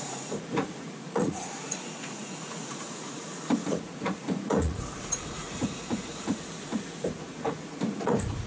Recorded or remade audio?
remade